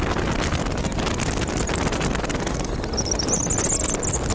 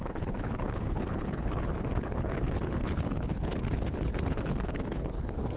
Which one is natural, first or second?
first